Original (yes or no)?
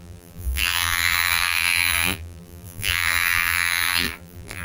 no